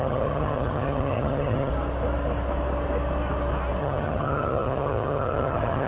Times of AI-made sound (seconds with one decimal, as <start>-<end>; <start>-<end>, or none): 0.0-1.7; 3.8-5.9